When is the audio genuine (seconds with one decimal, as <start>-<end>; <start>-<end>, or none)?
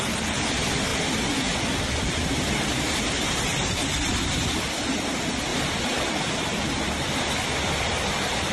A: 5.5-6.1